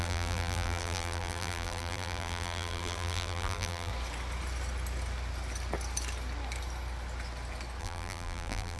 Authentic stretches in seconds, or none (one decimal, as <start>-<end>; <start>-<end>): 3.9-7.8